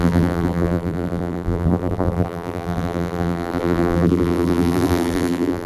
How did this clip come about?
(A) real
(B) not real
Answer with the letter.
B